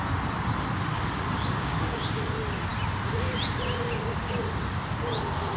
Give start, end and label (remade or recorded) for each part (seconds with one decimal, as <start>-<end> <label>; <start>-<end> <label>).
0.0-0.9 recorded; 0.9-2.2 remade; 2.2-5.6 recorded